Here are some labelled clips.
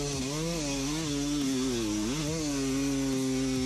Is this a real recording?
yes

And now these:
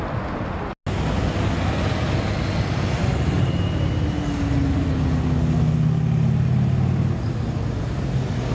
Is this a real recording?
yes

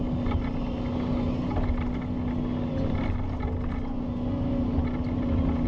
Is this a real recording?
yes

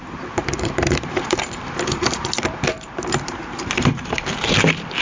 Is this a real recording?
no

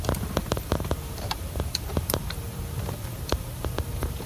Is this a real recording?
no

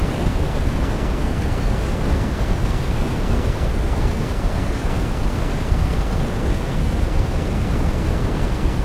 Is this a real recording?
no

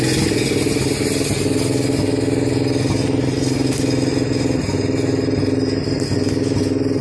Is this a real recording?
yes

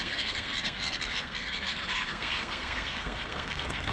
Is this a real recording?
no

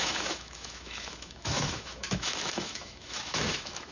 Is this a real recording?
no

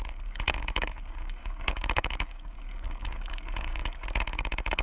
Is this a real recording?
no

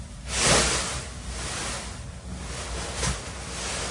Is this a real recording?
yes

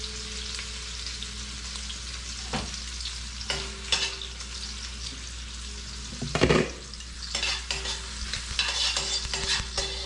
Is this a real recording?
yes